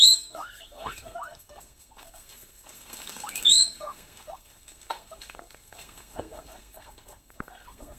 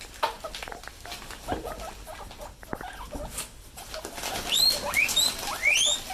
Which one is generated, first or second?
first